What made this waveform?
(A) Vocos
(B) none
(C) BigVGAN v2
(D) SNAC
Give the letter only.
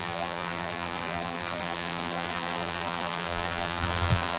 C